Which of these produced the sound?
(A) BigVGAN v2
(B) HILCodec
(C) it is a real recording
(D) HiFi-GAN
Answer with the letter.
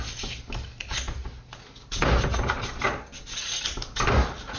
C